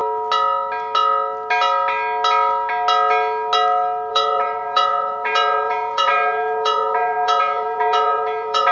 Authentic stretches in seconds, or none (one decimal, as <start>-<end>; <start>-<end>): 0.0-4.1